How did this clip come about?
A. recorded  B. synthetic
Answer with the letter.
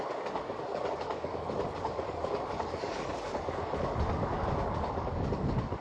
B